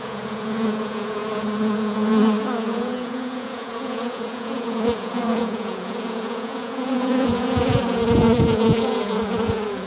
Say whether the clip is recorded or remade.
remade